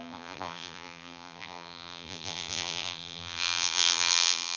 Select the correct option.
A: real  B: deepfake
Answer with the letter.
B